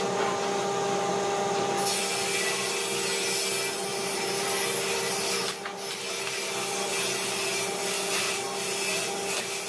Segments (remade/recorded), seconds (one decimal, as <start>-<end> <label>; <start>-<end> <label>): 0.0-9.7 recorded